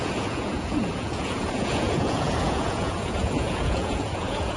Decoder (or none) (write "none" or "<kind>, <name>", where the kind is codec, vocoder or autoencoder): vocoder, Vocos